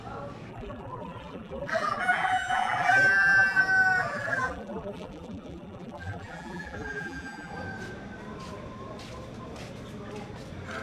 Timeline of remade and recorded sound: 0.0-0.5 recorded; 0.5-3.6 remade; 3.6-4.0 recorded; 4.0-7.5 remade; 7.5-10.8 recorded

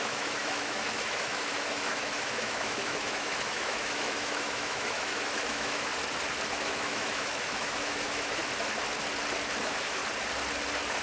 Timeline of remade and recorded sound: 0.0-5.9 remade; 5.9-6.5 recorded; 6.5-8.4 remade; 8.4-9.6 recorded; 9.6-10.0 remade; 10.0-11.0 recorded

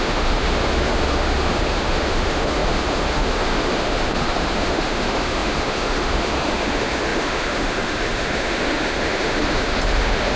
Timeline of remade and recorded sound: 0.0-10.4 remade

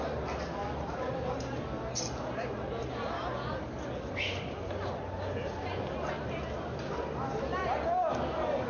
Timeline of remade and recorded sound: 0.0-8.7 recorded

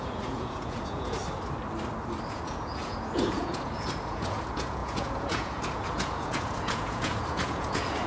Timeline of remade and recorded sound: 0.0-1.2 remade; 1.2-2.3 recorded; 2.3-8.1 remade